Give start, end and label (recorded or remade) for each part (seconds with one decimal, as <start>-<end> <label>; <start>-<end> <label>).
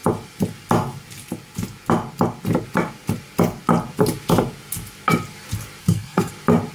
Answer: 0.0-5.8 recorded; 5.8-6.3 remade; 6.3-6.7 recorded